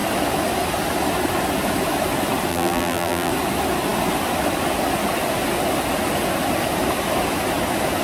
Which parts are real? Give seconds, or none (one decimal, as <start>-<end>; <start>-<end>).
0.0-2.5; 3.3-8.0